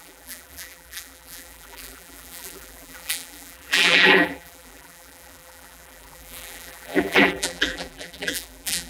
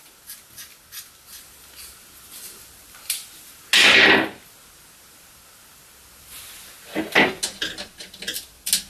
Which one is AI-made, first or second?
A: first